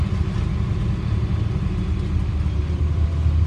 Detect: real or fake real